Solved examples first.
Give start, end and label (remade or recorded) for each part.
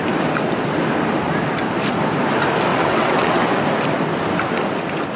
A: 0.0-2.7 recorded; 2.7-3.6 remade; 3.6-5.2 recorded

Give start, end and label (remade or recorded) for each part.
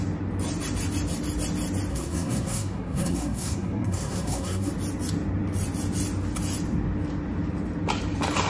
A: 0.0-1.9 recorded; 1.9-4.7 remade; 4.7-8.5 recorded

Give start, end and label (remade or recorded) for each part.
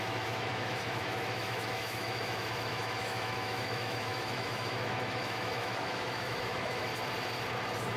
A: 0.0-6.9 remade; 6.9-8.0 recorded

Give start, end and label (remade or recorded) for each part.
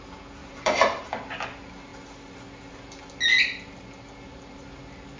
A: 0.0-0.4 recorded; 0.4-1.3 remade; 1.3-5.2 recorded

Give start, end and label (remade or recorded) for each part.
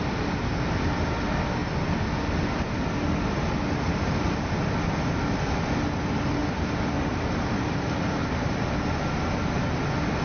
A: 0.0-6.4 recorded; 6.4-8.6 remade; 8.6-10.2 recorded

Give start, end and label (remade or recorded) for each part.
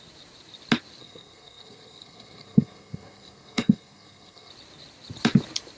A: 0.0-1.0 recorded; 1.0-4.5 remade; 4.5-5.8 recorded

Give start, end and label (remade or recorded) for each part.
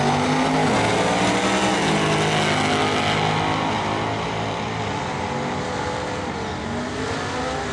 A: 0.0-7.7 recorded